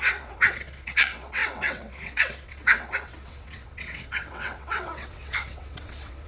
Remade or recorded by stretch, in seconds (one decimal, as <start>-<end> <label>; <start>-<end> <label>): 0.0-6.3 remade

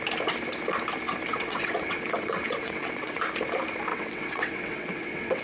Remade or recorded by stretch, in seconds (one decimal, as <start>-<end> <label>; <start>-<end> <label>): 0.0-1.3 recorded; 1.3-3.2 remade; 3.2-3.9 recorded; 3.9-5.4 remade

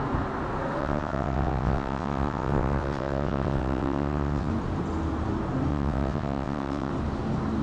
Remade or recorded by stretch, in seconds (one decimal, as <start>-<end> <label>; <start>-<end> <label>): 0.0-0.8 recorded; 0.8-4.5 remade; 4.5-5.7 recorded; 5.7-6.9 remade; 6.9-7.6 recorded

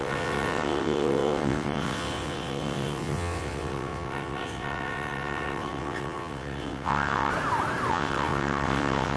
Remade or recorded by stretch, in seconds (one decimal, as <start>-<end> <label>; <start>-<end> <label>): 0.0-7.3 remade; 7.3-7.9 recorded; 7.9-9.2 remade